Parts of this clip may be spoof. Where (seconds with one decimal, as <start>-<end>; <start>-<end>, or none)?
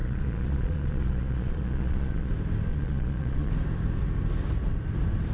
0.0-2.3; 2.7-3.5